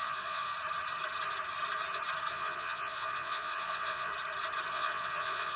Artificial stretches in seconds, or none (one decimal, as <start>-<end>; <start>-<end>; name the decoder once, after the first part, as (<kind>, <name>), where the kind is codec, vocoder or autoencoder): 0.0-0.5 (vocoder, Vocos); 2.3-4.1; 4.7-5.6